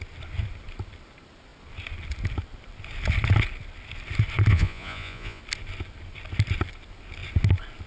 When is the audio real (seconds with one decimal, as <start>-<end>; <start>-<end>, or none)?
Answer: 0.0-4.5; 5.4-7.9